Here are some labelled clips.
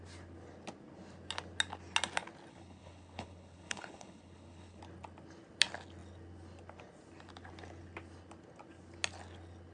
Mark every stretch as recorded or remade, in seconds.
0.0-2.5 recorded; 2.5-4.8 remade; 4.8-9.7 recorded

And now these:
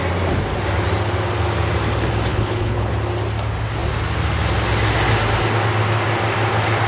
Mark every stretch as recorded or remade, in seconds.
0.0-2.3 recorded; 2.3-2.9 remade; 2.9-6.9 recorded

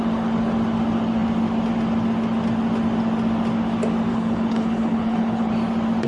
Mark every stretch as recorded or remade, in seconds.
0.0-4.1 recorded; 4.1-5.5 remade; 5.5-6.1 recorded